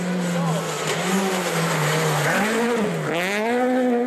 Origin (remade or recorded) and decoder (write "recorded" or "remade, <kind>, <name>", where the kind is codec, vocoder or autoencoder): recorded